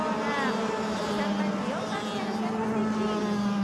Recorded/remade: recorded